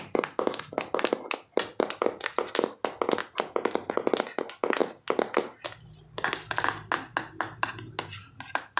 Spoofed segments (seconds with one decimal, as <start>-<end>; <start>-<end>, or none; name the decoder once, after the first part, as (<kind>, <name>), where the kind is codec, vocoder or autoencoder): none